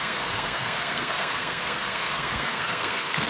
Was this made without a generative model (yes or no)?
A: no